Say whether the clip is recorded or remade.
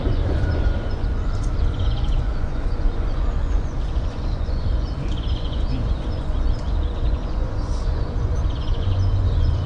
remade